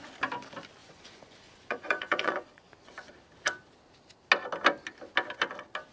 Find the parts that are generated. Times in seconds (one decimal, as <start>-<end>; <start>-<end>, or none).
0.8-3.1